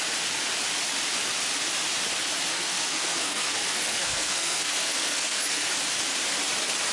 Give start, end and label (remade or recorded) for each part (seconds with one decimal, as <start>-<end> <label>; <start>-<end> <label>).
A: 0.0-2.5 recorded; 2.5-5.7 remade; 5.7-6.9 recorded